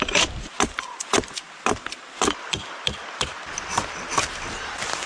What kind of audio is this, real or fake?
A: real